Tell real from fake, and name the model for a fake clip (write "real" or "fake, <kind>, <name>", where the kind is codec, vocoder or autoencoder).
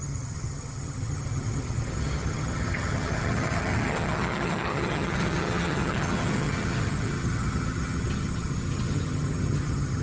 fake, vocoder, HiFi-GAN